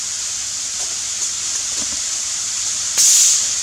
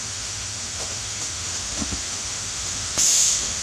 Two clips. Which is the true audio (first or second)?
first